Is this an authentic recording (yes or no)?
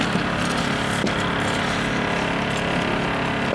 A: yes